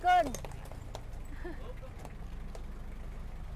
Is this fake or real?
real